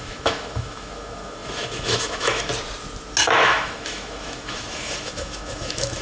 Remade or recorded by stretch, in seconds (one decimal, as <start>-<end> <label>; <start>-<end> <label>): 0.0-2.5 remade; 2.5-3.2 recorded; 3.2-6.0 remade